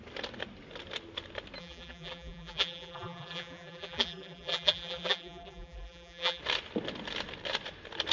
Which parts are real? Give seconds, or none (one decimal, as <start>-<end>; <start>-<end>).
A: 0.0-1.6; 6.4-8.1